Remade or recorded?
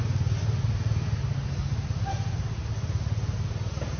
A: recorded